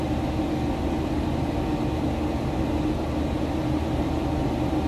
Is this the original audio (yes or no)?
yes